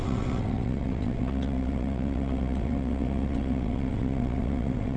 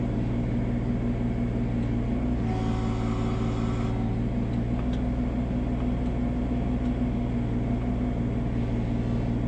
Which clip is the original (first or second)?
second